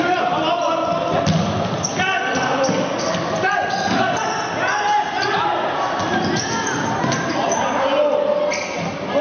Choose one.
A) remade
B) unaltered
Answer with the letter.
B